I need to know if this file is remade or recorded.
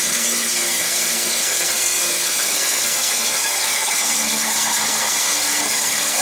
remade